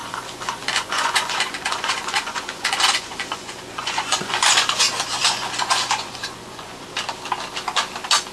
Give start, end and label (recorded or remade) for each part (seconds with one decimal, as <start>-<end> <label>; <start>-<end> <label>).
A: 0.0-4.8 remade; 4.8-5.2 recorded; 5.2-6.9 remade; 6.9-8.3 recorded

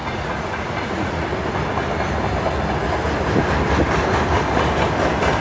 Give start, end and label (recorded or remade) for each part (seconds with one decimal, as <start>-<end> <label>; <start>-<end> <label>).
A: 0.0-1.2 remade; 1.2-5.4 recorded

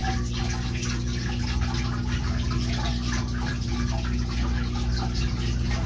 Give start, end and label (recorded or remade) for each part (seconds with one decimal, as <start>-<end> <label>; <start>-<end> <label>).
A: 0.0-5.9 recorded

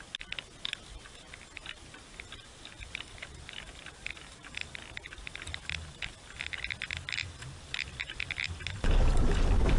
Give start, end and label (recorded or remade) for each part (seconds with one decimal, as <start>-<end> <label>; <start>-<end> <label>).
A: 0.0-9.8 recorded